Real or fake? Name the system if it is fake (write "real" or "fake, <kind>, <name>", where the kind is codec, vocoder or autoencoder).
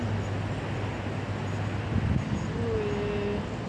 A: real